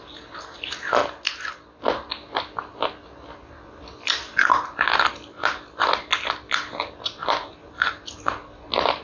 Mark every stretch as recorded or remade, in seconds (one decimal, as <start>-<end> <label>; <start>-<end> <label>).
0.0-9.0 recorded

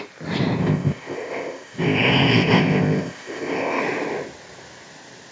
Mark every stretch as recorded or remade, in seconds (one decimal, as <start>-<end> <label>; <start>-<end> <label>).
0.0-0.6 recorded; 0.6-3.8 remade; 3.8-5.3 recorded

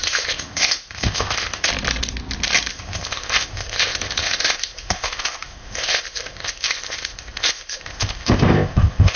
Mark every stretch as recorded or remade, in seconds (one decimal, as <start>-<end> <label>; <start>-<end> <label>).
0.0-1.7 remade; 1.7-2.7 recorded; 2.7-9.2 remade

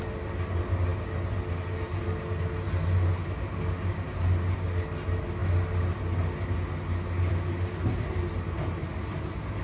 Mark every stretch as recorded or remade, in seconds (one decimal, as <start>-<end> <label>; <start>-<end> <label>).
0.0-9.6 recorded